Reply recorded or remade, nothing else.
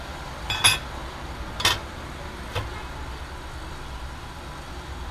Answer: recorded